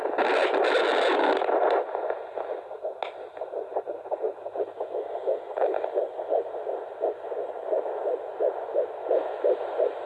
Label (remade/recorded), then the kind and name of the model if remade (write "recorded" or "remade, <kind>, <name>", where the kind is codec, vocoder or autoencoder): recorded